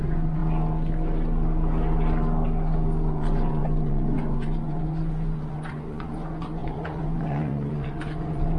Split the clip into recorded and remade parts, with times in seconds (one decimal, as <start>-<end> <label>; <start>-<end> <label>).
0.0-0.4 remade; 0.4-3.1 recorded; 3.1-8.6 remade